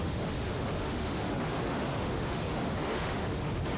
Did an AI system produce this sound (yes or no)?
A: yes